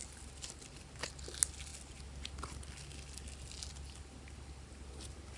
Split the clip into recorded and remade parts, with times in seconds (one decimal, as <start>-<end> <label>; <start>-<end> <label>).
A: 0.0-5.4 recorded